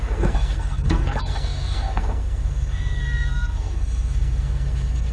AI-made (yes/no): yes